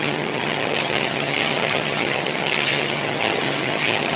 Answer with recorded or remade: remade